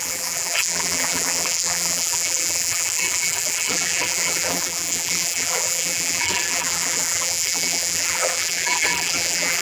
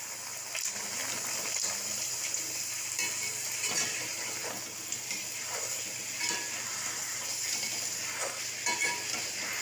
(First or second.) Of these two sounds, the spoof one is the first